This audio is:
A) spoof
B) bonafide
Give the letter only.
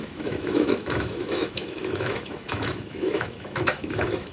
A